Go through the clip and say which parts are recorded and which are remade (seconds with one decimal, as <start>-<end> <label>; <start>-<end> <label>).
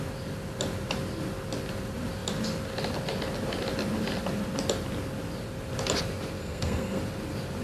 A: 0.0-6.4 recorded; 6.4-7.0 remade; 7.0-7.6 recorded